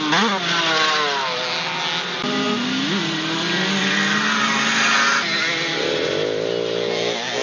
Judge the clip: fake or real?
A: real